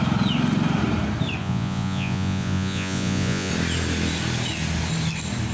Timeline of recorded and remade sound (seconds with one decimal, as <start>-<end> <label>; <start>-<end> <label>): 0.0-1.4 recorded; 1.4-3.5 remade; 3.5-5.5 recorded